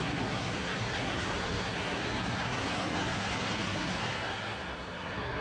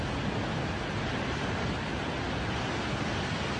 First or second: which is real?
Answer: second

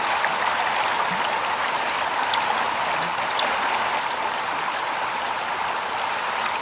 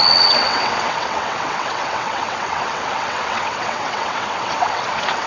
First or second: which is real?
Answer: first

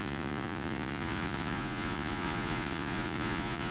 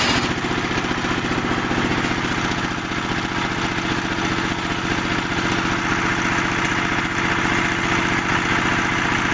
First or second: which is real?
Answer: second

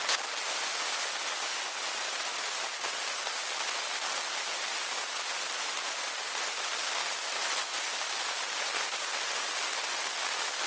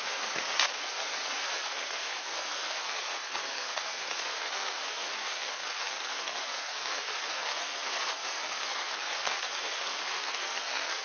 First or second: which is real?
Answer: first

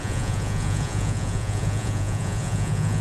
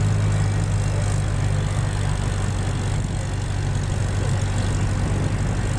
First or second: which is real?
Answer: second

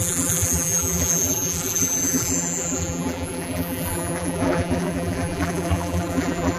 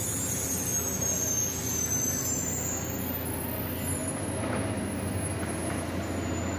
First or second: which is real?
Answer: second